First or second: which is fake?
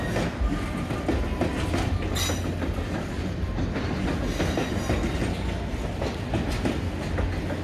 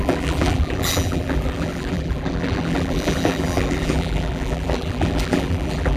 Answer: second